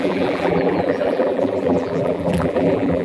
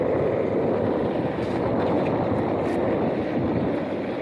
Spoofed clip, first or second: first